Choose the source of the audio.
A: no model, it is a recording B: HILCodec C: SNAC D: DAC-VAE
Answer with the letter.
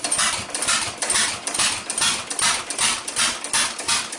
A